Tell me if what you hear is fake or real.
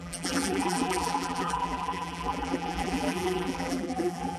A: fake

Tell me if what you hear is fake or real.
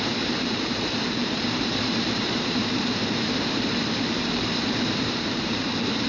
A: fake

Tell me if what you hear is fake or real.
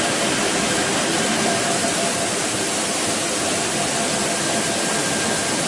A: fake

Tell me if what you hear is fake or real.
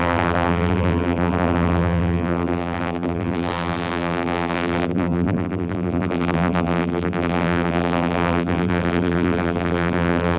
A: fake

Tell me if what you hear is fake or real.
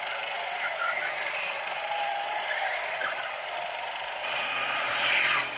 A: fake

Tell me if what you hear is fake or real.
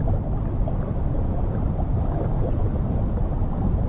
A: real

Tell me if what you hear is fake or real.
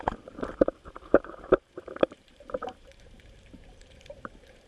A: fake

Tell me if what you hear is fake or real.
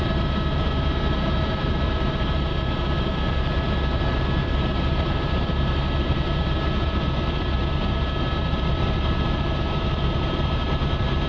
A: fake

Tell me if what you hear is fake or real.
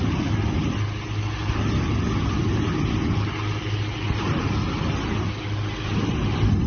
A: real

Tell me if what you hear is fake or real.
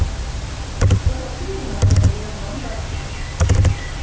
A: real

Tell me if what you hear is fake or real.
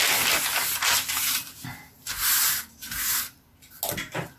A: real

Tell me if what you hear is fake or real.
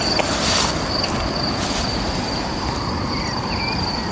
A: real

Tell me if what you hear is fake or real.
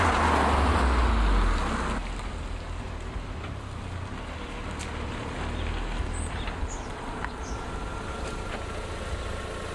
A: real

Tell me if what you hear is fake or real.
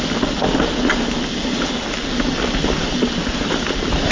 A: real